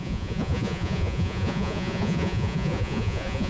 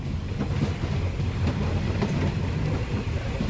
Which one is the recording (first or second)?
second